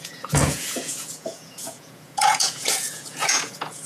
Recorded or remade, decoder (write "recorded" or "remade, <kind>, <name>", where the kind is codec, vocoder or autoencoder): remade, vocoder, Vocos